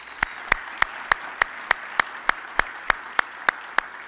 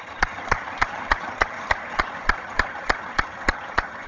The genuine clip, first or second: first